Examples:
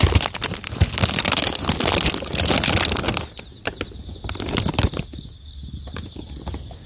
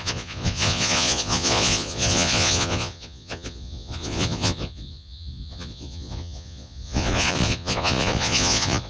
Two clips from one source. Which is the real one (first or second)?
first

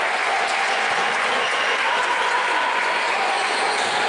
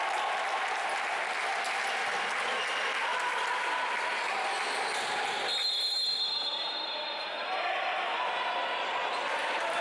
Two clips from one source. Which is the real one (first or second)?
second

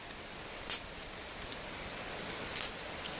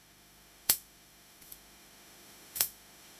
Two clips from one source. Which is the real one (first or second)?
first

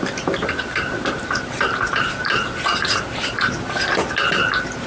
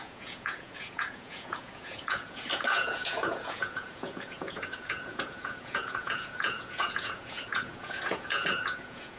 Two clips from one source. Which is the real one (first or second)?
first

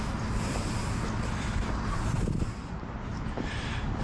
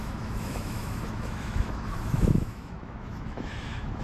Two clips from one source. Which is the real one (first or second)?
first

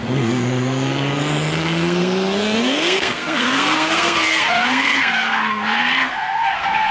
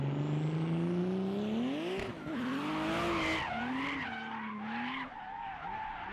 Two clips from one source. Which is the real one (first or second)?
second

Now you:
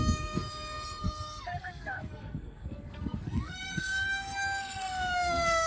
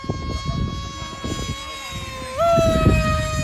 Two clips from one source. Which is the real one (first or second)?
second